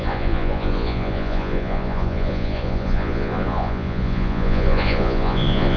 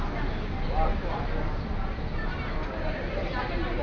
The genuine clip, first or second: second